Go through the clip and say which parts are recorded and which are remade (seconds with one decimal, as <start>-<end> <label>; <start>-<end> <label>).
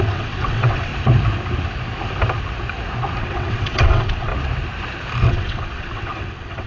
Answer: 0.0-0.9 remade; 0.9-3.2 recorded; 3.2-4.3 remade; 4.3-5.2 recorded; 5.2-6.7 remade